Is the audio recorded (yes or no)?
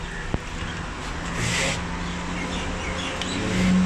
yes